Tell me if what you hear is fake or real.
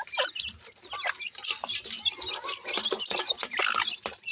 real